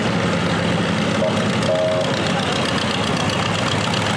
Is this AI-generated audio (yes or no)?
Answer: no